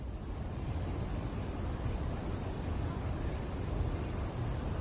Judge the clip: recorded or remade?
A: recorded